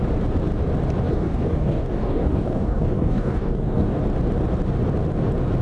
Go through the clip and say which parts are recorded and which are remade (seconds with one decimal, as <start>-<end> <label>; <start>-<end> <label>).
0.0-1.1 recorded; 1.1-4.0 remade; 4.0-5.6 recorded